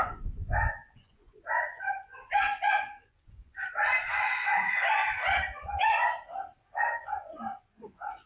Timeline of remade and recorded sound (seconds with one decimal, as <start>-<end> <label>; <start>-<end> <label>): 0.0-5.0 remade; 5.0-5.6 recorded; 5.6-6.0 remade; 6.0-7.0 recorded; 7.0-8.3 remade